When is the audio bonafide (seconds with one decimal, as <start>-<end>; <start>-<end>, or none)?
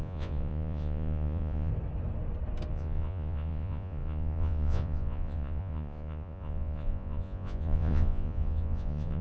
1.7-2.7